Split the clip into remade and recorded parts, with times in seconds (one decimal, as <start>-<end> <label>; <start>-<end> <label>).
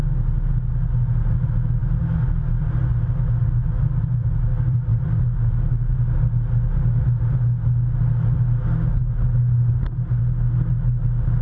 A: 0.0-11.4 recorded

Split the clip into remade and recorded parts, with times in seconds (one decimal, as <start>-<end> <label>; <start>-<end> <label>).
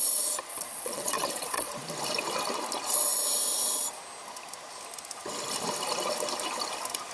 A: 0.0-0.5 recorded; 0.5-1.7 remade; 1.7-7.1 recorded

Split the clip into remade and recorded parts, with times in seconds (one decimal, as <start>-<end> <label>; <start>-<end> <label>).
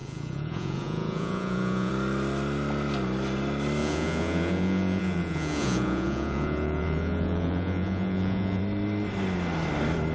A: 0.0-1.9 remade; 1.9-3.8 recorded; 3.8-8.6 remade; 8.6-10.1 recorded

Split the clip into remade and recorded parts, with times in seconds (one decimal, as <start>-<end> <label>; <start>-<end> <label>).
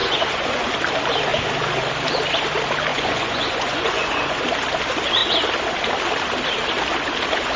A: 0.0-0.7 remade; 0.7-2.9 recorded; 2.9-4.4 remade; 4.4-7.6 recorded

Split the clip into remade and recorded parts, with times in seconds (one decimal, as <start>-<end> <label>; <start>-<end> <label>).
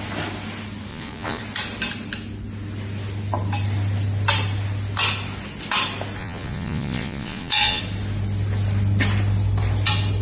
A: 0.0-0.9 recorded; 0.9-1.4 remade; 1.4-6.2 recorded; 6.2-7.8 remade; 7.8-10.2 recorded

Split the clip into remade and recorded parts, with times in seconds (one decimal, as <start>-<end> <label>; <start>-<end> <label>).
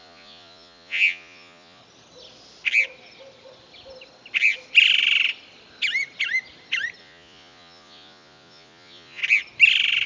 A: 0.0-1.8 remade; 1.8-7.0 recorded; 7.0-9.2 remade; 9.2-10.1 recorded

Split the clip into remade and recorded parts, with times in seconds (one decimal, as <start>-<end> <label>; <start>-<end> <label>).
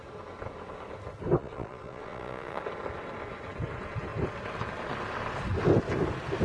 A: 0.0-1.4 recorded; 1.4-2.6 remade; 2.6-6.4 recorded